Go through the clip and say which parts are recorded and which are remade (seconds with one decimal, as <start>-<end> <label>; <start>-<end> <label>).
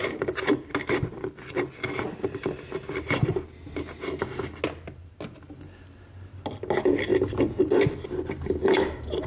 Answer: 0.0-9.3 recorded